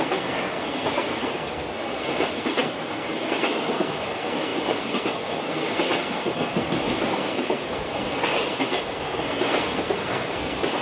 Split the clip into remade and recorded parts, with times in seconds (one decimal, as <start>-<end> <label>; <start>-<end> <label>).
0.0-10.8 remade